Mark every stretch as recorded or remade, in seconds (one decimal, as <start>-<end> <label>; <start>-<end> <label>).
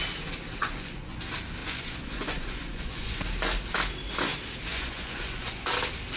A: 0.0-0.6 recorded; 0.6-1.2 remade; 1.2-1.6 recorded; 1.6-3.2 remade; 3.2-4.7 recorded; 4.7-5.7 remade; 5.7-6.2 recorded